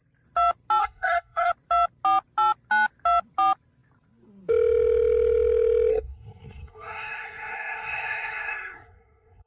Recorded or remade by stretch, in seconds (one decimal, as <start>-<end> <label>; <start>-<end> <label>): 0.0-0.8 recorded; 0.8-1.5 remade; 1.5-5.9 recorded; 5.9-9.5 remade